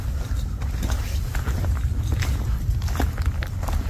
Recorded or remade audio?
recorded